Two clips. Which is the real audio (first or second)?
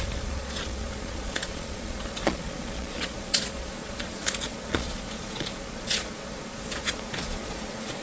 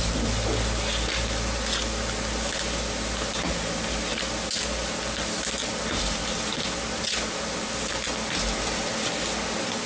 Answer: second